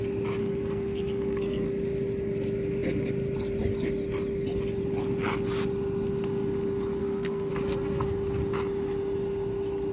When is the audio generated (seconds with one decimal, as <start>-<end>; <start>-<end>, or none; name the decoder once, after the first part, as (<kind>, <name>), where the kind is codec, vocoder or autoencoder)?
0.4-1.7 (codec, SNAC); 7.0-7.5